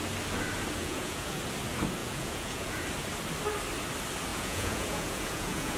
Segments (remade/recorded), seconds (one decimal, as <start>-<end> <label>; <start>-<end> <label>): 0.0-0.8 recorded; 0.8-1.4 remade; 1.4-2.0 recorded; 2.0-2.8 remade; 2.8-4.3 recorded; 4.3-5.8 remade